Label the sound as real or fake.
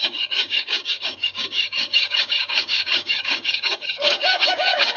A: fake